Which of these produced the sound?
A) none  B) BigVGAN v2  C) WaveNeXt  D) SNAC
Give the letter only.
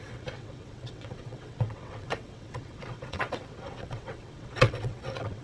C